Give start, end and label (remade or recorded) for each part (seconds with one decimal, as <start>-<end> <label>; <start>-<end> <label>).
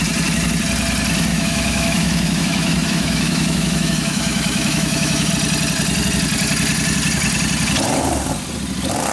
0.0-1.3 recorded; 1.3-5.3 remade; 5.3-9.1 recorded